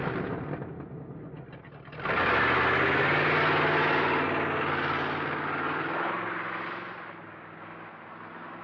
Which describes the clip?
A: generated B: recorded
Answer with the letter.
B